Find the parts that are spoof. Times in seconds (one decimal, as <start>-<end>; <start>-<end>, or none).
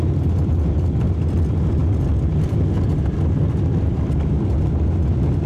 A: none